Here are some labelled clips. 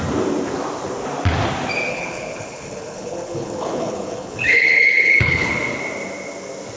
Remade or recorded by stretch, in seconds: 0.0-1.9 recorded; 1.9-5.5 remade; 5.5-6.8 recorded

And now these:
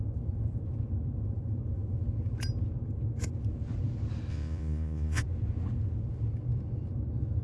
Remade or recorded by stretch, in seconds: 0.0-4.3 recorded; 4.3-5.2 remade; 5.2-7.4 recorded

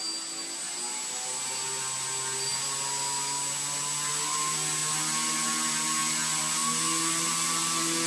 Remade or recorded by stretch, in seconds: 0.0-8.1 recorded

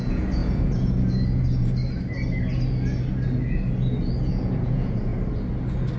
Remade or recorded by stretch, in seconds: 0.0-1.8 remade; 1.8-4.3 recorded; 4.3-5.1 remade; 5.1-6.0 recorded

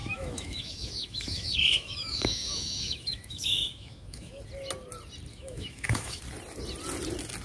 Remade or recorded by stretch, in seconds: 0.0-4.4 remade; 4.4-5.3 recorded; 5.3-6.2 remade; 6.2-7.4 recorded

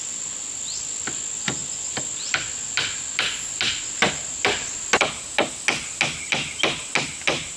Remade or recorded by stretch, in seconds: 0.0-7.6 recorded